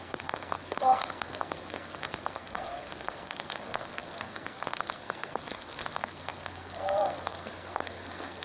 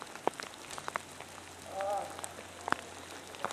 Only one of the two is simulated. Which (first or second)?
first